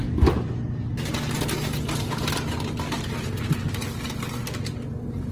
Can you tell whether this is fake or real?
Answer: real